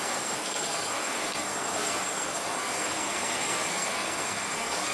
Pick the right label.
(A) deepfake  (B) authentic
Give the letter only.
A